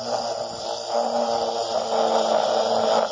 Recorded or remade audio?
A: recorded